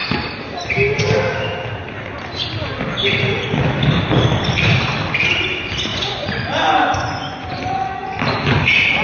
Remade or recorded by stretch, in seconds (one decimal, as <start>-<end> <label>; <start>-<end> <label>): 0.0-5.9 recorded; 5.9-7.6 remade; 7.6-9.0 recorded